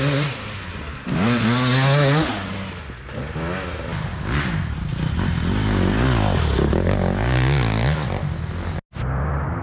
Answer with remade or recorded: recorded